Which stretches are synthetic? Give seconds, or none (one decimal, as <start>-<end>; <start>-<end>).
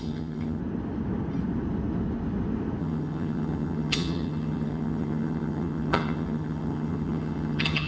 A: 0.0-0.6; 2.8-7.9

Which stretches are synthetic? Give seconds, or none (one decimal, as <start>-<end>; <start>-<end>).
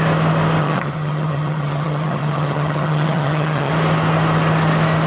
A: 0.6-3.7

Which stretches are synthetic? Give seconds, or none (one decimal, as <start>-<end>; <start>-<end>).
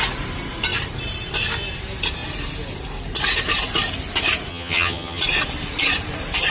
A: 4.5-5.2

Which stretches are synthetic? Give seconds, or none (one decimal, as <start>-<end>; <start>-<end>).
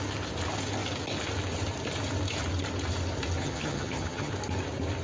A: 3.4-4.3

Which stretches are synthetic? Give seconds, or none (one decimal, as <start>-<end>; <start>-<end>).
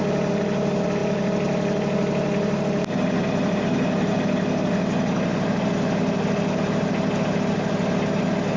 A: none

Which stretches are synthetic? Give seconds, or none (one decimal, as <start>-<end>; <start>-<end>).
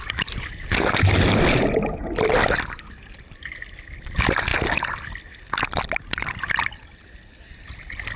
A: none